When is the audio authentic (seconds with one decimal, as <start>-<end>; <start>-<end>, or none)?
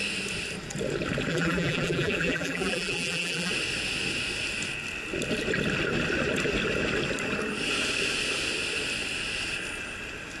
0.0-1.3; 3.5-10.4